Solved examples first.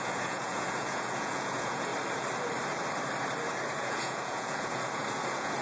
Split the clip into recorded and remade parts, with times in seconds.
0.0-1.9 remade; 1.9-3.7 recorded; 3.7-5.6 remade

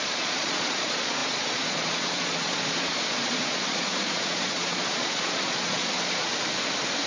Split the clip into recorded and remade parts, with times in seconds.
0.0-6.3 remade; 6.3-7.1 recorded

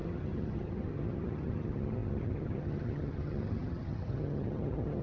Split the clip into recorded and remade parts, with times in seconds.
0.0-5.0 remade